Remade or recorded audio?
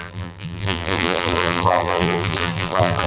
remade